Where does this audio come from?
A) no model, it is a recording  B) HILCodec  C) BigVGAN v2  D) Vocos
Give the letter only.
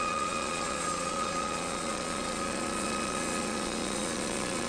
D